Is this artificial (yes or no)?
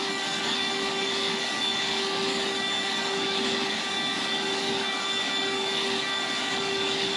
yes